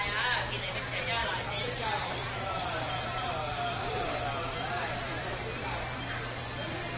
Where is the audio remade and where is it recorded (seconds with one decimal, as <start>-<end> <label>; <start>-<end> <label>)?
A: 0.0-1.2 recorded; 1.2-5.4 remade; 5.4-7.0 recorded